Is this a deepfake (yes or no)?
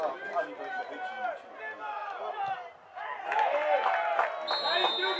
no